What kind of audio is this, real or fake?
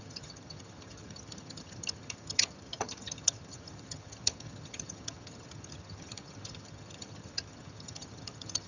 fake